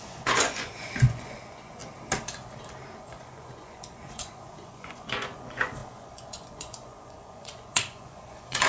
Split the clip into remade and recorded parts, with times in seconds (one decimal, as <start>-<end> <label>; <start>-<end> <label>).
0.0-1.8 remade; 1.8-3.0 recorded; 3.0-8.7 remade